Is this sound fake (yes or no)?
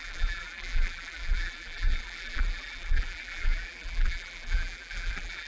yes